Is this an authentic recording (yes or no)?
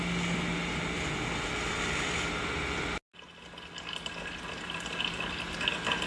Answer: yes